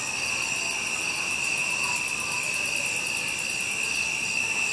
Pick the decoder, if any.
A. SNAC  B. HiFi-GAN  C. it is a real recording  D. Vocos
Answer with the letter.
C